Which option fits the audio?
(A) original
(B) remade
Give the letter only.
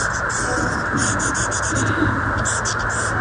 A